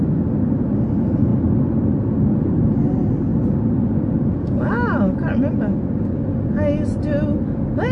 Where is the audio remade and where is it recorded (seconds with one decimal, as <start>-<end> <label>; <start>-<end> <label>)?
0.0-7.9 recorded

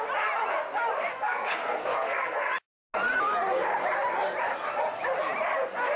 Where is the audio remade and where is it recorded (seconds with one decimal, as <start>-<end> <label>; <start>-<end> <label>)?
0.0-1.1 recorded; 1.1-2.5 remade; 2.5-6.0 recorded

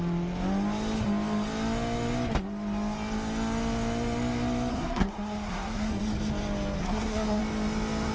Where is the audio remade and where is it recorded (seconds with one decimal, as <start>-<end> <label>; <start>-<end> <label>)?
0.0-4.7 recorded; 4.7-5.9 remade; 5.9-6.8 recorded; 6.8-7.4 remade; 7.4-8.1 recorded